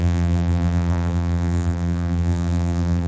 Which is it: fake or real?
fake